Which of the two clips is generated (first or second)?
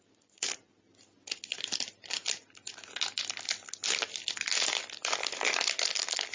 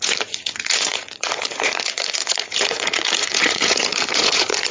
second